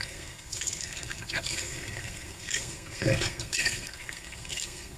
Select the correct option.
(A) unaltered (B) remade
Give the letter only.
B